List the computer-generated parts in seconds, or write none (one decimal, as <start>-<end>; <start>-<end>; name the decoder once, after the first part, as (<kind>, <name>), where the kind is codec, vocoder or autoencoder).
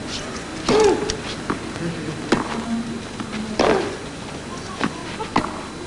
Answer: 0.0-0.5 (vocoder, Vocos); 3.8-5.0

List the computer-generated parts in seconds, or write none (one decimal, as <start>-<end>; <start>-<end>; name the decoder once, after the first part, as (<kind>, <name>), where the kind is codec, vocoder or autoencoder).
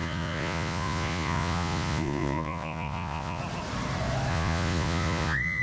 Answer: 0.0-3.4 (vocoder, Vocos); 4.3-5.6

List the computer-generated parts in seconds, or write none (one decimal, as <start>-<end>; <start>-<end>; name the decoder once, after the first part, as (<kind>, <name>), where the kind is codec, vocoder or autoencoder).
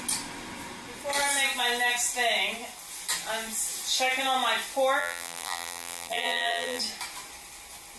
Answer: 5.0-6.8 (vocoder, BigVGAN v2)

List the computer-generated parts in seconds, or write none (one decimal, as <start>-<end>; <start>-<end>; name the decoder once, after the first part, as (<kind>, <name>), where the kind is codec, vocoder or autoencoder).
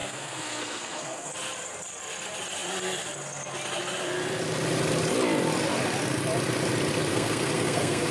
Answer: 0.0-1.3 (codec, SNAC); 7.1-8.1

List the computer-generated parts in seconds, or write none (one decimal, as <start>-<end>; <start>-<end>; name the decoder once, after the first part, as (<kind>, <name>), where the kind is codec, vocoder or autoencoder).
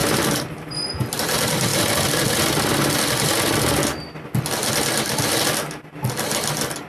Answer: none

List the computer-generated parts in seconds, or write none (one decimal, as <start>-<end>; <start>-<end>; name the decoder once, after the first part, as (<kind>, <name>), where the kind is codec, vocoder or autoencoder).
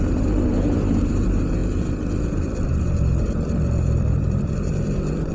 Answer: 0.0-5.3 (vocoder, BigVGAN v2)